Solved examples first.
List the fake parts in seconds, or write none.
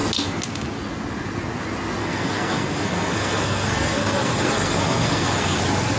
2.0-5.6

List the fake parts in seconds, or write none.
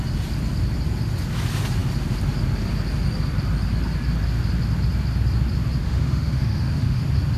5.8-7.0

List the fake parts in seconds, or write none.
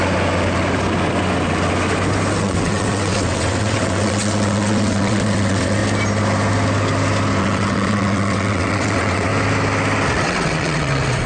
2.4-5.8; 7.4-9.3; 10.1-11.3